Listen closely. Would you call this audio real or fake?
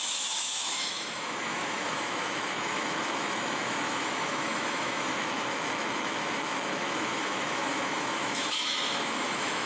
fake